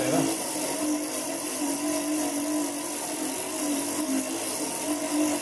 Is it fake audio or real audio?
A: real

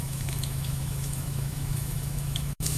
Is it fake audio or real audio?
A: fake